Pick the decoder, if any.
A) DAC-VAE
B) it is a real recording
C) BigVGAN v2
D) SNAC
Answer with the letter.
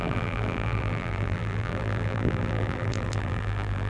C